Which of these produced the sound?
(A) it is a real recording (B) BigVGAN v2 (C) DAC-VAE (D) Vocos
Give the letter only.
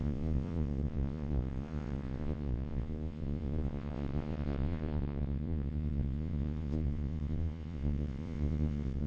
D